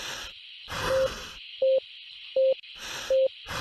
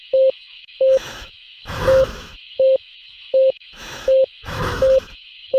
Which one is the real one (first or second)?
first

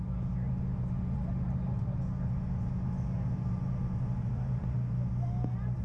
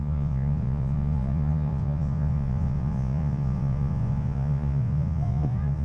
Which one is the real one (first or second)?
first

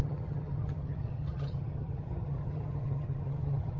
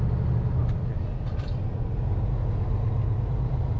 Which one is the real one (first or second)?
second